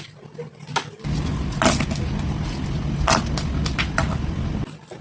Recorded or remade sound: recorded